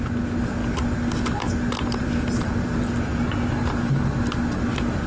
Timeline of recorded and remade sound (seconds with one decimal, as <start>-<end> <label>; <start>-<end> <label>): 0.0-5.1 recorded